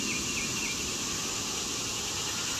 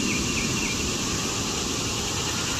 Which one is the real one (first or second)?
first